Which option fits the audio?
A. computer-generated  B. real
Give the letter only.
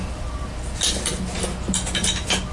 B